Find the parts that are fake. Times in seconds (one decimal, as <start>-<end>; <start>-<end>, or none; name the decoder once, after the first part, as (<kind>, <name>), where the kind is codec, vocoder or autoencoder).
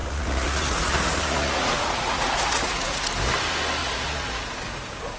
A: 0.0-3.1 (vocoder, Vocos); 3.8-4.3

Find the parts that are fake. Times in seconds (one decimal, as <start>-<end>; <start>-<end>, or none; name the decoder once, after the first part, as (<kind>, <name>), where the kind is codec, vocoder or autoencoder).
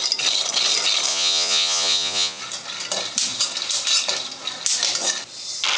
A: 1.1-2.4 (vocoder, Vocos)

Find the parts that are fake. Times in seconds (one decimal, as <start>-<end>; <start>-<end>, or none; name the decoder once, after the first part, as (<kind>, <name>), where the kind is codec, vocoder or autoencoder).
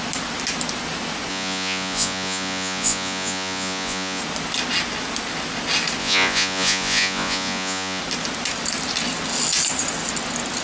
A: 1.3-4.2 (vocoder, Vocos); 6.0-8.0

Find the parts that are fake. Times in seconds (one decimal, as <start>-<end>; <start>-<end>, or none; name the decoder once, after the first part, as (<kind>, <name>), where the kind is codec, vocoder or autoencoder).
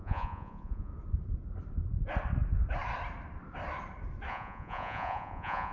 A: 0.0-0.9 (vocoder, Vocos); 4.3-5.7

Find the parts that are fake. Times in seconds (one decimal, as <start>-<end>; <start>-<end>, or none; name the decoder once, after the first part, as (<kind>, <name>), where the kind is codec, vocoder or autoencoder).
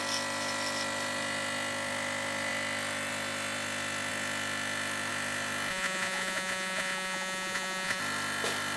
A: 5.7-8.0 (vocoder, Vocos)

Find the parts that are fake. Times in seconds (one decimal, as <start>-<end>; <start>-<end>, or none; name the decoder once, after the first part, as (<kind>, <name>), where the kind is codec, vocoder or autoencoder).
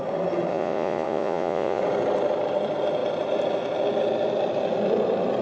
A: 0.5-1.8 (vocoder, Vocos)